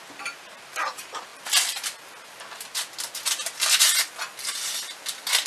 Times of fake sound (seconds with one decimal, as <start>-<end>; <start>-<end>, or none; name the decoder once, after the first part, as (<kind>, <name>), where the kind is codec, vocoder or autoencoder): none